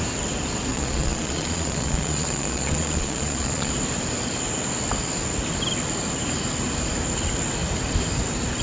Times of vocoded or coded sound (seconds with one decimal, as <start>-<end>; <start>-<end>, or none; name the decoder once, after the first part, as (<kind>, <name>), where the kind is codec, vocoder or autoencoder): 0.7-3.7 (vocoder, Vocos)